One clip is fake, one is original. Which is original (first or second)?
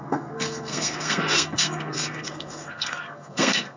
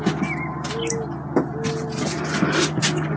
second